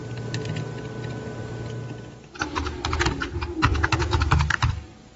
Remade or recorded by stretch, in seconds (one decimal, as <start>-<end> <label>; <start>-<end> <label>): 0.0-3.7 recorded; 3.7-4.7 remade; 4.7-5.2 recorded